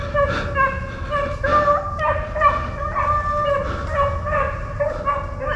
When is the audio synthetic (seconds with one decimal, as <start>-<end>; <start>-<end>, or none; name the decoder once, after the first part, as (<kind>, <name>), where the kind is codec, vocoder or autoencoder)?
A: none